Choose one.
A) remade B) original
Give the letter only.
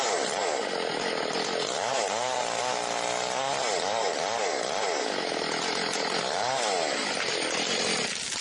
B